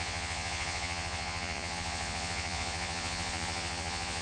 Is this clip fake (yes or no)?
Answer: yes